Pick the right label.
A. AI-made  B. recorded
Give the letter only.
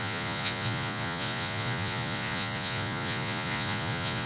A